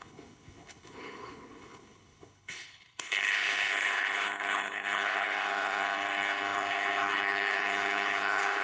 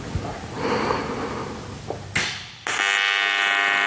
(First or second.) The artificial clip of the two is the first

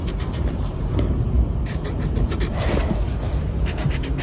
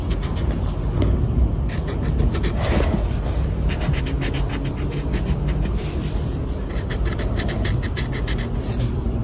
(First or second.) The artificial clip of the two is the first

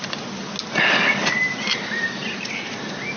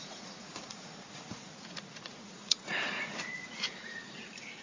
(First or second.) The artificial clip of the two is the second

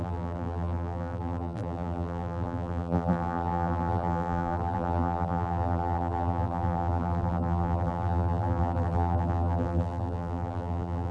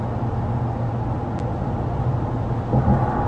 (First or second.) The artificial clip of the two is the first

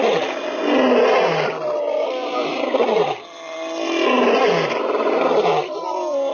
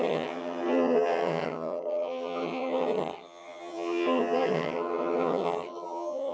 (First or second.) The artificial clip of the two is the second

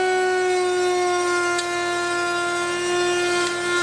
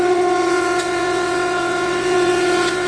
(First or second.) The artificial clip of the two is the second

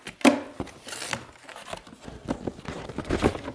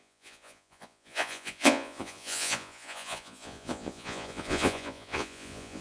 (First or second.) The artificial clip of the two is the second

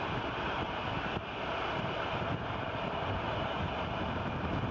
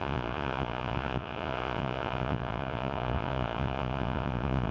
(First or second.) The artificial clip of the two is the second